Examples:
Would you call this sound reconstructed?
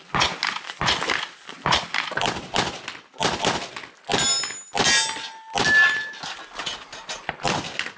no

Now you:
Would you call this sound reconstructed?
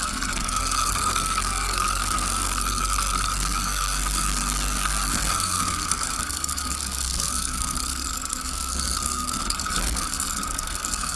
yes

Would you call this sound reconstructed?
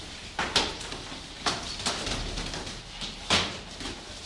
no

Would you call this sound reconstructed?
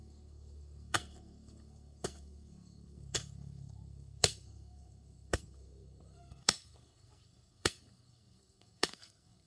yes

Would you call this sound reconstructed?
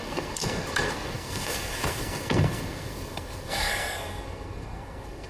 yes